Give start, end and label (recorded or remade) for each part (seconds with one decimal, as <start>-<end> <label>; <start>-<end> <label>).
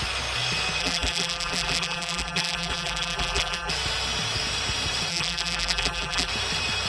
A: 0.0-0.8 recorded; 0.8-3.7 remade; 3.7-5.1 recorded; 5.1-6.3 remade; 6.3-6.9 recorded